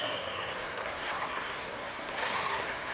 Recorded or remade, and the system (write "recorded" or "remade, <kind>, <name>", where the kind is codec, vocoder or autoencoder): remade, codec, SNAC